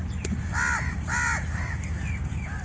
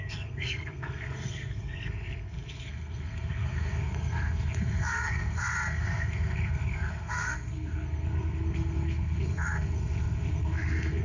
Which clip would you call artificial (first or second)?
second